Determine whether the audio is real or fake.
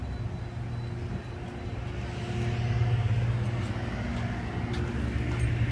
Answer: real